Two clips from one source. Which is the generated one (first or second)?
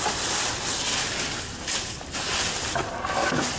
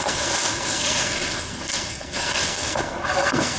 second